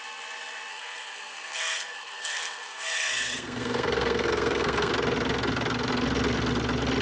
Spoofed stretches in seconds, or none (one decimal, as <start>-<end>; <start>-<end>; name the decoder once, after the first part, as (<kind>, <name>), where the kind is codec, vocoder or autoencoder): 0.7-4.9 (codec, SNAC)